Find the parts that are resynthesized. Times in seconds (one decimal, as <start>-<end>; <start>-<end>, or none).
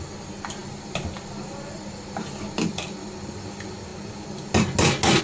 none